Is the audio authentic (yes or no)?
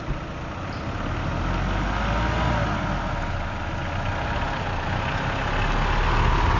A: yes